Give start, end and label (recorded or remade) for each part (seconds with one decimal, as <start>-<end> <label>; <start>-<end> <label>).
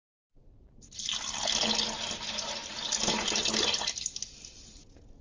0.0-5.2 recorded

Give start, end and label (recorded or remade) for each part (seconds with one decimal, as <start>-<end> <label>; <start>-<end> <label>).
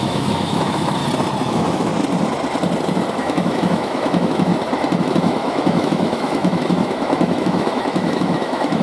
0.0-1.0 remade; 1.0-1.5 recorded; 1.5-1.9 remade; 1.9-3.1 recorded; 3.1-4.5 remade; 4.5-5.0 recorded; 5.0-8.8 remade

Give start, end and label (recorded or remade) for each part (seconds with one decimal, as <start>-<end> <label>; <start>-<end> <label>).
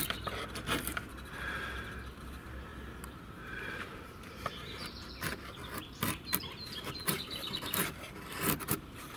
0.0-2.7 remade; 2.7-3.6 recorded; 3.6-9.2 remade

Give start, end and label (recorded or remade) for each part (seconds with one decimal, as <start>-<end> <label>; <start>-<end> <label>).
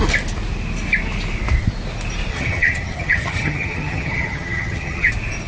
0.0-2.3 recorded; 2.3-5.1 remade; 5.1-5.5 recorded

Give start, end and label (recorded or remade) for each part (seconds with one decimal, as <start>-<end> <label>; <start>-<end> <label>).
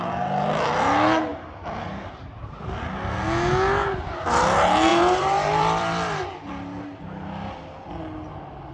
0.0-1.3 recorded; 1.3-2.1 remade; 2.1-4.9 recorded; 4.9-6.8 remade; 6.8-8.7 recorded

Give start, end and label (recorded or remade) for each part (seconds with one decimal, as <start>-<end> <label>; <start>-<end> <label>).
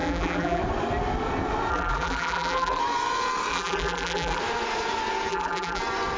0.0-0.6 remade; 0.6-1.7 recorded; 1.7-2.8 remade; 2.8-3.5 recorded; 3.5-4.4 remade; 4.4-5.3 recorded; 5.3-5.8 remade; 5.8-6.2 recorded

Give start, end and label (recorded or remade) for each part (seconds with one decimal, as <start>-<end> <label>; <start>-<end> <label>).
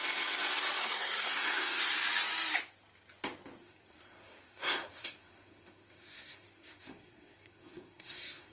0.0-0.8 recorded; 0.8-1.8 remade; 1.8-3.6 recorded; 3.6-8.5 remade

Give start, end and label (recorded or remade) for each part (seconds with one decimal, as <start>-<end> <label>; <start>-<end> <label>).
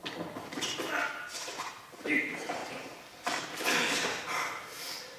0.0-5.2 recorded